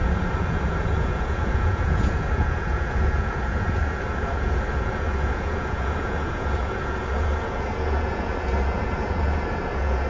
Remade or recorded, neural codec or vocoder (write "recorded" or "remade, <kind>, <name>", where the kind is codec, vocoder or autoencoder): remade, vocoder, Vocos